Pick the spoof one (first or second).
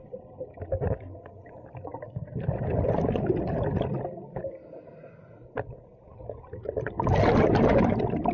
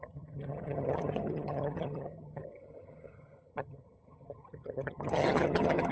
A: second